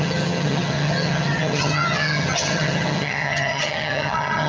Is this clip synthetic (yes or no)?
yes